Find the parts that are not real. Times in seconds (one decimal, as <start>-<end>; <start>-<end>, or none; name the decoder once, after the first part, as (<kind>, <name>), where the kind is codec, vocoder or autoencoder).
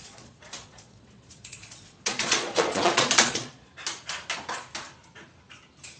0.0-3.7 (vocoder, Vocos)